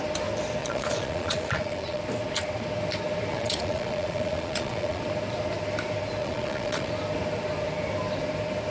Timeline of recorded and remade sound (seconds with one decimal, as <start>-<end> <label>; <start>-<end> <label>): 0.0-0.6 recorded; 0.6-2.0 remade; 2.0-3.3 recorded; 3.3-5.0 remade; 5.0-6.2 recorded; 6.2-6.9 remade; 6.9-8.7 recorded